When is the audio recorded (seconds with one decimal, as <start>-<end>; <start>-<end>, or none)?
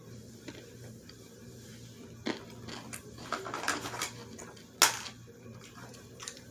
1.7-3.0; 4.2-5.6